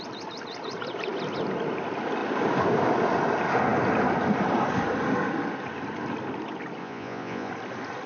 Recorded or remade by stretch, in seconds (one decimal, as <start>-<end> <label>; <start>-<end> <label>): 0.0-6.8 recorded; 6.8-7.5 remade; 7.5-8.1 recorded